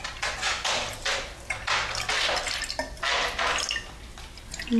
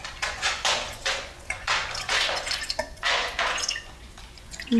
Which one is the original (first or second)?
first